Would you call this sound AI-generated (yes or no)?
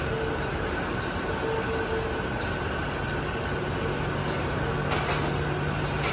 no